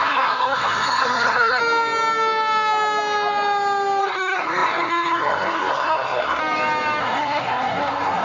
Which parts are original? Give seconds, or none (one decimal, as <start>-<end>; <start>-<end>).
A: 1.6-4.0; 6.4-7.0